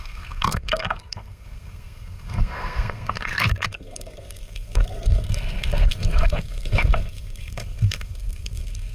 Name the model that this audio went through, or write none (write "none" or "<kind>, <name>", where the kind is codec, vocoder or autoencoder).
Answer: codec, SNAC